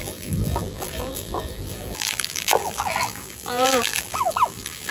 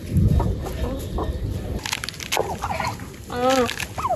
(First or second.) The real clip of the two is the second